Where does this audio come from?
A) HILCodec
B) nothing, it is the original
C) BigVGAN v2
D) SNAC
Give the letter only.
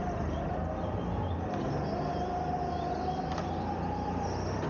B